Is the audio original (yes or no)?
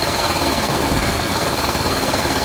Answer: no